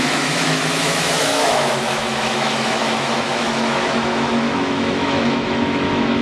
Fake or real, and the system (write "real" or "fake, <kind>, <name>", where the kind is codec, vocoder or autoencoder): fake, autoencoder, DAC-VAE